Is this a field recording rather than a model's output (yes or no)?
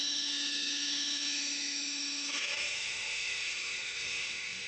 no